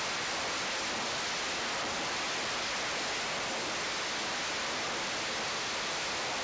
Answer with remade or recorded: recorded